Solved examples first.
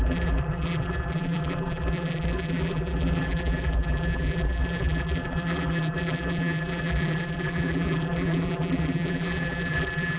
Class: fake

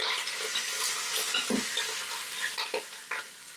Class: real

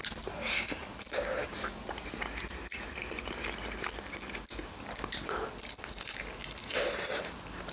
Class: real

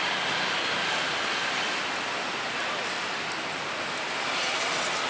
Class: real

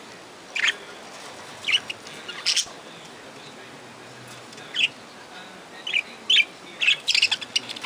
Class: real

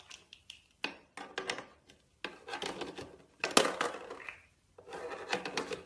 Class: real